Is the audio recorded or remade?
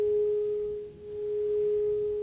remade